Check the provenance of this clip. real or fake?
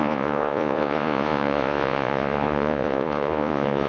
fake